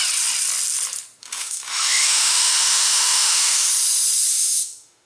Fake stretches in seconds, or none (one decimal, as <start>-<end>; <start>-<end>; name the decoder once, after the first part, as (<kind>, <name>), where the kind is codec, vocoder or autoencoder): 1.2-3.7 (autoencoder, DAC-VAE); 4.3-5.1